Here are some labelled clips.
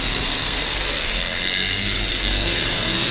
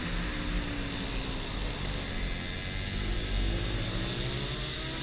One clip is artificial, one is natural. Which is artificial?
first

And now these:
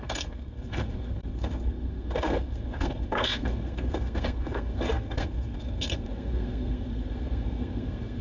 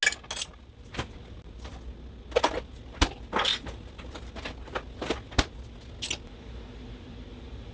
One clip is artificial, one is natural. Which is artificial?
first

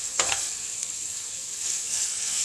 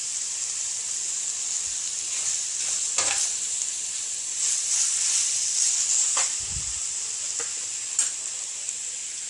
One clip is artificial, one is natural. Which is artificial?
first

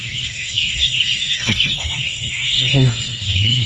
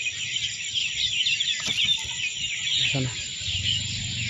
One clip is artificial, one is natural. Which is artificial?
first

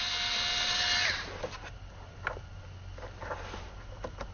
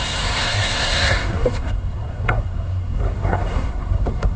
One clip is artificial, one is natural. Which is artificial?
second